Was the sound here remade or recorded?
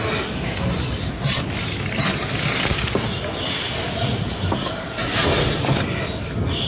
recorded